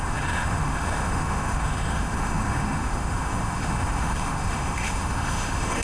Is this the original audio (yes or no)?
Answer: no